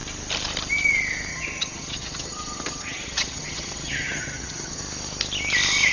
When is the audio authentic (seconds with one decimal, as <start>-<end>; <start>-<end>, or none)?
0.0-1.3; 4.8-5.9